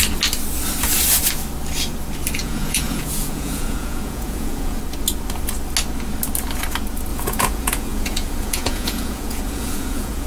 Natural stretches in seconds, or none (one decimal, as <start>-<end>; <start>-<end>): 0.0-2.4; 4.8-7.1